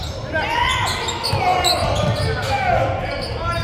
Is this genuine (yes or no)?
yes